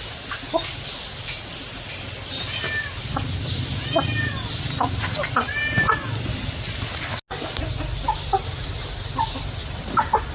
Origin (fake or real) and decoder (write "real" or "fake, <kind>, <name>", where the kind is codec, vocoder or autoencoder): real